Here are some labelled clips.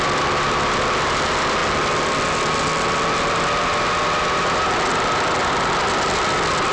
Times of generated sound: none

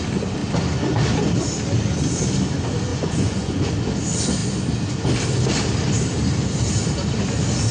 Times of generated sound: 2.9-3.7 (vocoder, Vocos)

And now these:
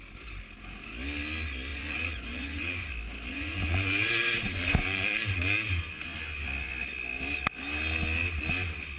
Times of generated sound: 1.7-2.9 (vocoder, Vocos); 3.3-5.7

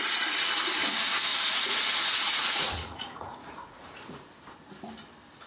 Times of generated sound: 1.3-4.6 (vocoder, Vocos)